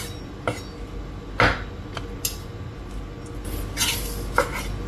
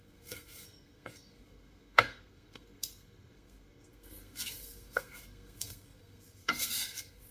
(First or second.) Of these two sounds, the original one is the first